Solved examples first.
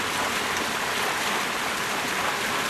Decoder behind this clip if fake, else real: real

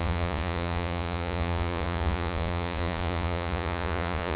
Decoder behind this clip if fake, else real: fake, vocoder, Vocos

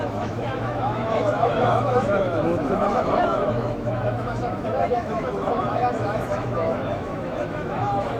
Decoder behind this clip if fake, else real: fake, autoencoder, DAC-VAE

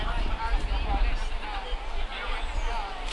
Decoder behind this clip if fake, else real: real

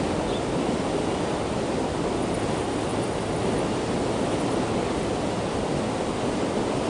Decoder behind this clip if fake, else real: real